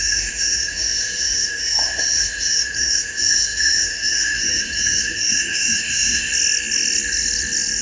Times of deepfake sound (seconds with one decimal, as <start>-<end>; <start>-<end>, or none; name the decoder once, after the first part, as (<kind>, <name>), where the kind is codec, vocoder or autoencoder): 0.0-6.3 (autoencoder, DAC-VAE)